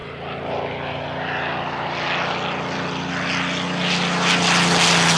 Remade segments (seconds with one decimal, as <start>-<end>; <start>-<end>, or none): none